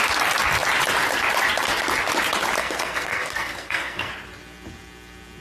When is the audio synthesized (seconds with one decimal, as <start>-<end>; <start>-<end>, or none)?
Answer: 2.6-4.1